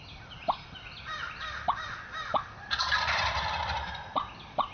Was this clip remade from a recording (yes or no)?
yes